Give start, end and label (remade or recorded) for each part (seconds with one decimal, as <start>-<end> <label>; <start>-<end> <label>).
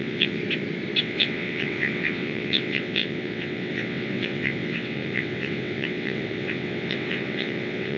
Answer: 0.0-0.4 remade; 0.4-1.0 recorded; 1.0-8.0 remade